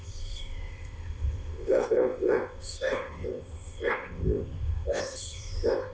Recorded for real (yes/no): no